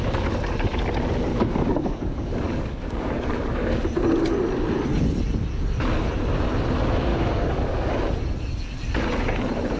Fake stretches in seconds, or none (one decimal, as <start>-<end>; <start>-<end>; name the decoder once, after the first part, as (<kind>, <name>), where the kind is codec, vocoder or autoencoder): 1.3-3.8 (codec, DAC); 7.1-7.9